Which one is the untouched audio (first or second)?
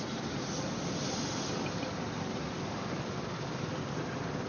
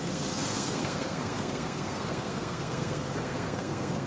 first